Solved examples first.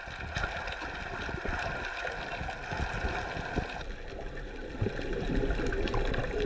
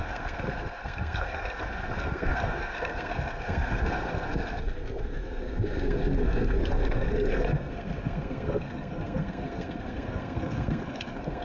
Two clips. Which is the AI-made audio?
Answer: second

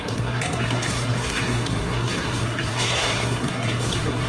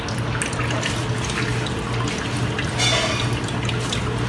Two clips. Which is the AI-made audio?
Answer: first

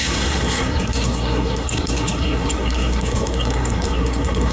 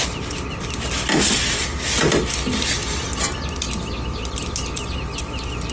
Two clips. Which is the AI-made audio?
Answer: first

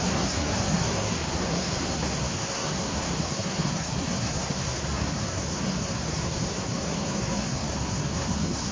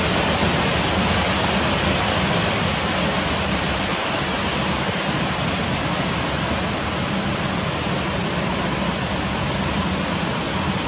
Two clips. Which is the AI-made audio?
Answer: first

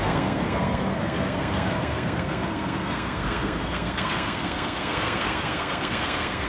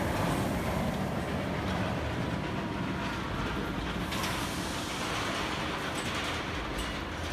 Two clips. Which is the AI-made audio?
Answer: first